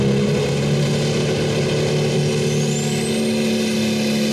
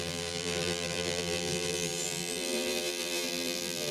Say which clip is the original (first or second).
first